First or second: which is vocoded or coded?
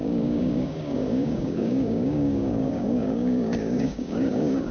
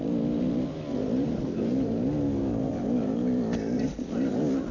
first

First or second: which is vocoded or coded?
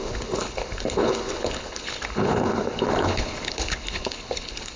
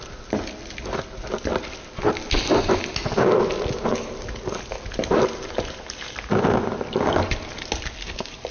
first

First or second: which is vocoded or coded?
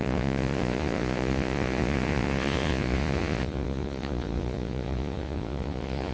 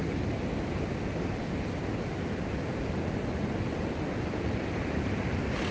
first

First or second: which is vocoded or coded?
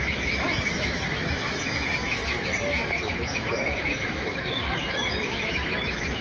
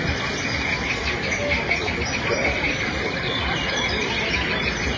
first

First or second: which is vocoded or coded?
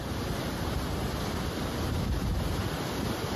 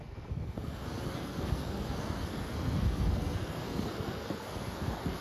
second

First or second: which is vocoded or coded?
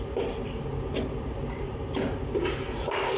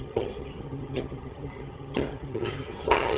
second